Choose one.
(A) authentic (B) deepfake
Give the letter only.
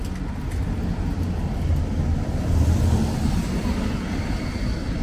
A